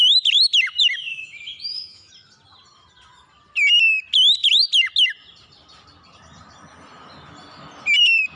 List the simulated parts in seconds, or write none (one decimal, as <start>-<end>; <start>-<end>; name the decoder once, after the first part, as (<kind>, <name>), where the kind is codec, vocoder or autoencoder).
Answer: 1.1-2.1 (autoencoder, DAC-VAE)